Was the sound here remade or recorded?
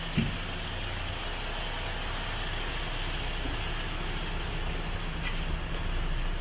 recorded